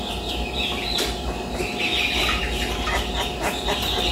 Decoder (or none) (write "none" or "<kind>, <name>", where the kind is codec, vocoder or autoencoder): none